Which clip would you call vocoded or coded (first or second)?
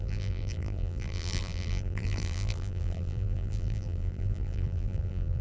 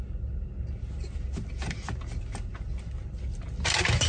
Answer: first